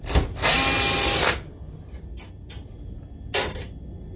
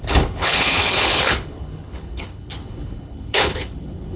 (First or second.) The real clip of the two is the first